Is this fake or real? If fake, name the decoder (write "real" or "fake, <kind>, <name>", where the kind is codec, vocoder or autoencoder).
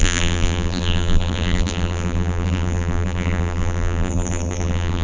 fake, vocoder, BigVGAN v2